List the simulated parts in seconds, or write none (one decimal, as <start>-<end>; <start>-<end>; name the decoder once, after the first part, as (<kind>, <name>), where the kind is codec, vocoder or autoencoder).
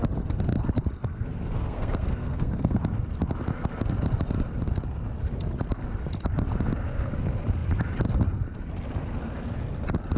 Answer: 1.0-2.8 (codec, SNAC)